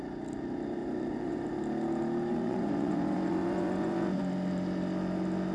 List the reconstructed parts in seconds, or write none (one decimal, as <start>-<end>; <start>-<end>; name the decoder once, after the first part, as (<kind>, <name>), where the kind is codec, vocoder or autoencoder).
0.8-1.5 (vocoder, Vocos); 2.3-4.2

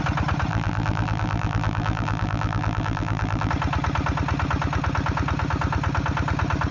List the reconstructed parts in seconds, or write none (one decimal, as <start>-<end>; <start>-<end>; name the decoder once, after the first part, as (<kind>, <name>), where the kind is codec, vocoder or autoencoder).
0.5-3.5 (vocoder, BigVGAN v2)

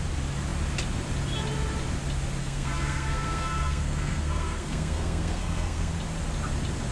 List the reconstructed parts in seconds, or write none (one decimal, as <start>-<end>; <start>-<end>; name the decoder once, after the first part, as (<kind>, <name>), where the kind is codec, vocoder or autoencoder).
2.4-5.9 (codec, SNAC)

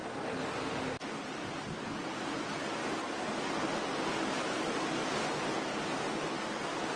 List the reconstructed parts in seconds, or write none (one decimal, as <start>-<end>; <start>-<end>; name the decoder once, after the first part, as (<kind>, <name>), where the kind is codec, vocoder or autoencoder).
none

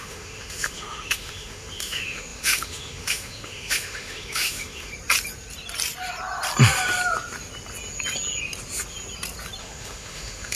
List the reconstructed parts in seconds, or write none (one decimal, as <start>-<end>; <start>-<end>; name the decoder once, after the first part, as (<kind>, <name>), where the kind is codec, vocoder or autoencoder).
0.0-4.9 (autoencoder, DAC-VAE); 9.6-10.5